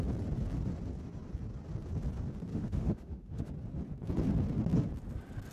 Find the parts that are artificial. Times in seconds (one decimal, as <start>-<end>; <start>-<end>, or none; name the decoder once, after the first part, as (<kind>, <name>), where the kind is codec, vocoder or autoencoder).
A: 2.5-3.5 (autoencoder, DAC-VAE)